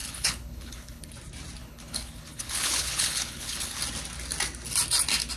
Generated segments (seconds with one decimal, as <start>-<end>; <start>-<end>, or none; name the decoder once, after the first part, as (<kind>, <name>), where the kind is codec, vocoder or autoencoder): 0.0-1.1 (codec, HILCodec); 1.6-3.8